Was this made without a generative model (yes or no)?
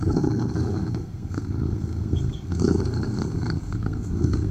no